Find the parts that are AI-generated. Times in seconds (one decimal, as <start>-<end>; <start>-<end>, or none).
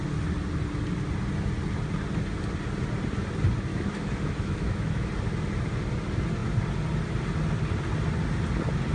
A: 3.7-5.1